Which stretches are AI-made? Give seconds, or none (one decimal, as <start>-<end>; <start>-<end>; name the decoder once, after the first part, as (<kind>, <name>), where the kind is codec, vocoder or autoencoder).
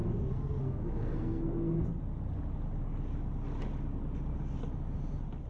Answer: 0.0-1.9 (codec, SNAC)